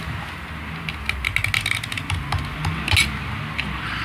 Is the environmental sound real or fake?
real